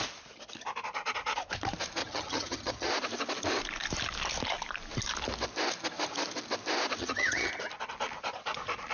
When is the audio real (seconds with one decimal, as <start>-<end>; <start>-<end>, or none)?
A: 0.0-2.0; 2.9-7.0; 7.5-8.9